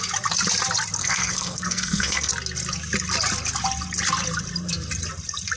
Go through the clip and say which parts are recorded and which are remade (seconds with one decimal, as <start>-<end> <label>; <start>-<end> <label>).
0.0-1.0 recorded; 1.0-2.3 remade; 2.3-5.6 recorded